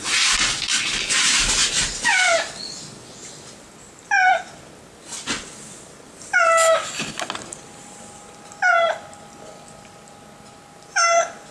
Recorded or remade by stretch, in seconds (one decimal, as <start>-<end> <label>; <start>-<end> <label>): 0.0-11.5 recorded